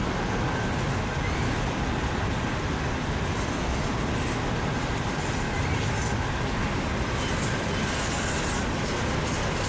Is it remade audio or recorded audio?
recorded